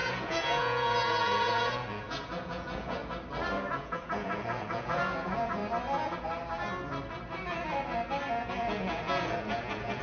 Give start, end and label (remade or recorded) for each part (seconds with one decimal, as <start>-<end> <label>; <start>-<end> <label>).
0.0-3.0 remade; 3.0-3.7 recorded; 3.7-5.6 remade; 5.6-8.3 recorded; 8.3-10.0 remade